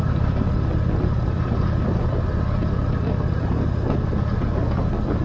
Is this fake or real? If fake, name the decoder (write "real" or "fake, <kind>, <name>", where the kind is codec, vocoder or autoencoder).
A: real